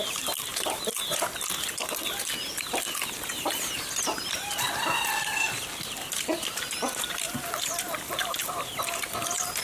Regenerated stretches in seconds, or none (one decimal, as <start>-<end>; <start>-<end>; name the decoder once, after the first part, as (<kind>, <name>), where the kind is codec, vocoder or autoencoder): 0.5-1.2 (vocoder, BigVGAN v2)